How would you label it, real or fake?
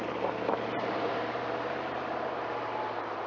fake